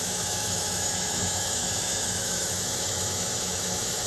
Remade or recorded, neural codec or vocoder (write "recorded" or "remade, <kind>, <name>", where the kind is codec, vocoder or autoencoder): remade, autoencoder, DAC-VAE